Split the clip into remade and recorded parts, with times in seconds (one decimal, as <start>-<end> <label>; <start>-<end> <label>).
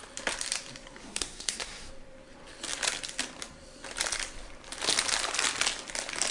0.0-1.0 recorded; 1.0-1.9 remade; 1.9-6.3 recorded